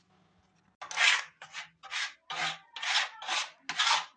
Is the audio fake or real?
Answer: real